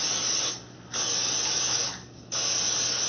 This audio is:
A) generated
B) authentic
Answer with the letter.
B